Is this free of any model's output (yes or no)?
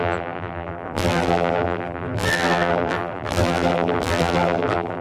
no